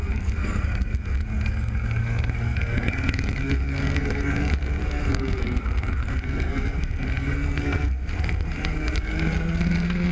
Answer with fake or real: fake